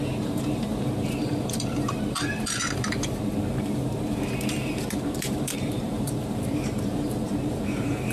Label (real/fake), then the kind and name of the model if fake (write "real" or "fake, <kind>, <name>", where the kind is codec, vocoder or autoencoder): fake, vocoder, BigVGAN v2